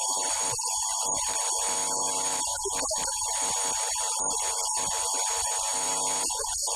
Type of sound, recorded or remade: remade